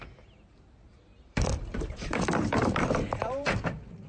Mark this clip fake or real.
fake